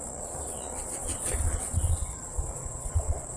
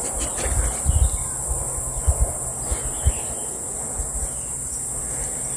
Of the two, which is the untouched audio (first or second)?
second